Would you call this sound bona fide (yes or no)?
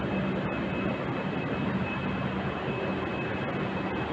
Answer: yes